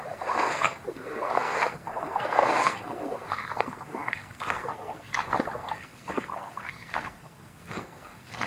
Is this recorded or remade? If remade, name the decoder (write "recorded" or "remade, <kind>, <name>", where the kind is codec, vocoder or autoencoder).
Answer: remade, codec, SNAC